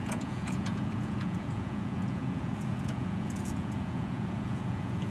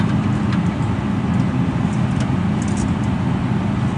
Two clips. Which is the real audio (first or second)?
second